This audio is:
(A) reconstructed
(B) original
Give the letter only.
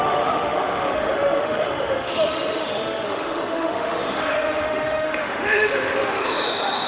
A